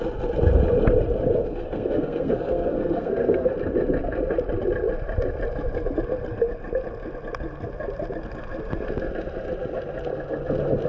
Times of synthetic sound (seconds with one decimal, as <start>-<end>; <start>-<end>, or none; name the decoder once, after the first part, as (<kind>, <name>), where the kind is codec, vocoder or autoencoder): 1.4-3.5 (codec, SNAC)